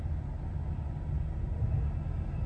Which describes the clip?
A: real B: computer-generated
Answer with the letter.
A